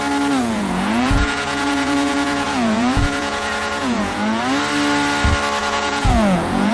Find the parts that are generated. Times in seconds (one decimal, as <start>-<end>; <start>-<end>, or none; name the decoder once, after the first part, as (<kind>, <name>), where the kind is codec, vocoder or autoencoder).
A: 0.4-4.4 (vocoder, Vocos); 5.6-6.7